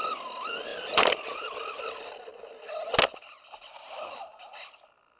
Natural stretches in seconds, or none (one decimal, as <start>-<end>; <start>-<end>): 0.0-0.7; 1.8-5.2